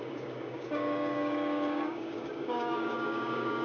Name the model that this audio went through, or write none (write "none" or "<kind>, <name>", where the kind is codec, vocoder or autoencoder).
codec, DAC